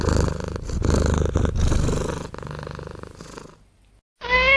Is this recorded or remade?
recorded